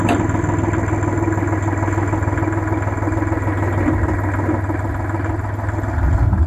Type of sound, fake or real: real